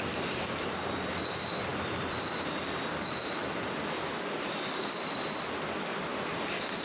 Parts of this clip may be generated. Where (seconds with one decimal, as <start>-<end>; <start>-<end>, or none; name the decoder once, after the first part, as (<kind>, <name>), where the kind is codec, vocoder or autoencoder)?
0.0-6.1 (vocoder, BigVGAN v2)